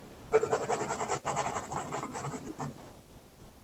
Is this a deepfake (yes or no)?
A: no